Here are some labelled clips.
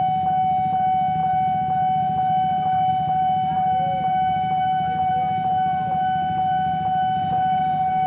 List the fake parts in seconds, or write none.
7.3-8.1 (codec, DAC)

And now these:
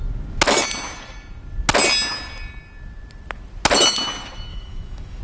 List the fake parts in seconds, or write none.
4.5-5.2 (autoencoder, DAC-VAE)

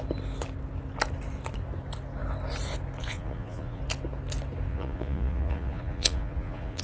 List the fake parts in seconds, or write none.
3.0-3.8 (vocoder, Vocos); 4.7-6.8

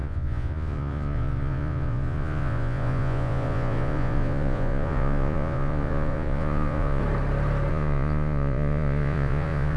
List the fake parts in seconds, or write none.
0.0-7.0 (vocoder, Vocos); 7.7-9.8

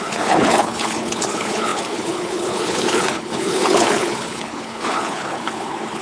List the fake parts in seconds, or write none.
0.0-6.0 (codec, HILCodec)

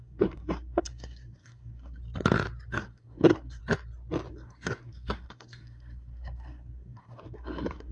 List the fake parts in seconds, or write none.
0.0-2.0 (codec, SNAC); 2.7-3.6; 4.3-7.9

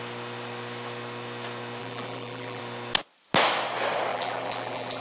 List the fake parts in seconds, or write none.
1.8-2.6 (vocoder, BigVGAN v2); 4.1-5.0